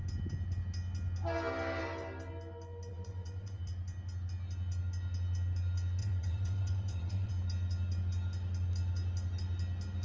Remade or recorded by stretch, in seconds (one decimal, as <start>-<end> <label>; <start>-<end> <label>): 0.0-2.9 recorded; 2.9-3.6 remade; 3.6-6.0 recorded; 6.0-7.3 remade; 7.3-10.0 recorded